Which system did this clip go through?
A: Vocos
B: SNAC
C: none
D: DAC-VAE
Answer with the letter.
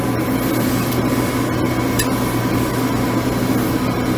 C